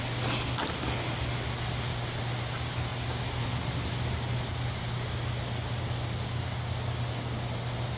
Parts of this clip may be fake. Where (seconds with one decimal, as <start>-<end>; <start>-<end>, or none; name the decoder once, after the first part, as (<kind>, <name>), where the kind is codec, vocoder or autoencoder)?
none